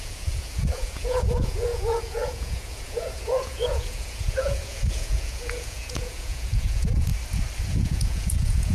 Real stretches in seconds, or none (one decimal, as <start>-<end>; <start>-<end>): 7.1-7.7